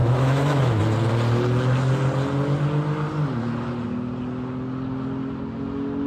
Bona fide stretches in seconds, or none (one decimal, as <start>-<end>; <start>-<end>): 0.8-6.1